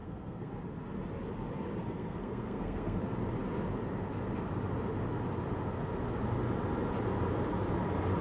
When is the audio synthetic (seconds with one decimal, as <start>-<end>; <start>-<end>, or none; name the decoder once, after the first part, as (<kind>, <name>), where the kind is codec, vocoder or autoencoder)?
0.0-0.5 (codec, SNAC); 1.8-3.0